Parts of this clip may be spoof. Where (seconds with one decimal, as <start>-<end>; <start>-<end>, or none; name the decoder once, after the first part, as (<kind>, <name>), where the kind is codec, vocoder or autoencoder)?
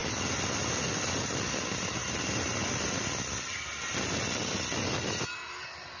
none